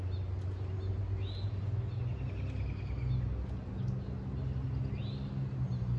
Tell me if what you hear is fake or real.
real